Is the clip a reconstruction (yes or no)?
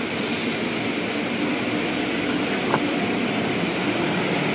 no